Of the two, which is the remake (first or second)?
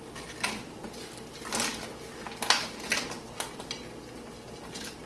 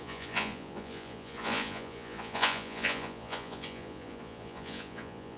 second